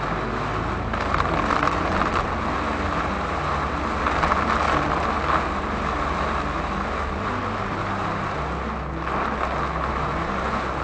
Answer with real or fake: real